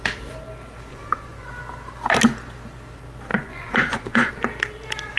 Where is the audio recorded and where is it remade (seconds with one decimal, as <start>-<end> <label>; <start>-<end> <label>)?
0.0-0.9 recorded; 0.9-1.5 remade; 1.5-3.3 recorded; 3.3-4.3 remade; 4.3-5.2 recorded